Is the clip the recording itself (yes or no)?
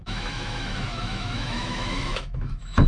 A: no